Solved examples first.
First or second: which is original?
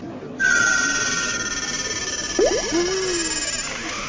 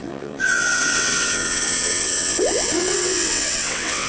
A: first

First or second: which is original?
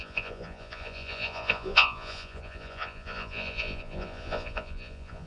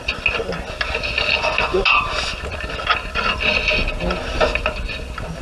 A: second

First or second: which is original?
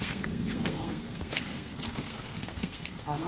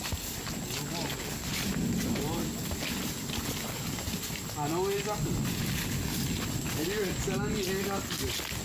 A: second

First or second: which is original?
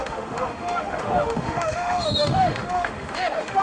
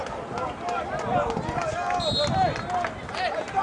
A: second